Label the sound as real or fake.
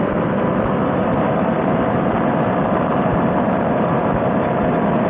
fake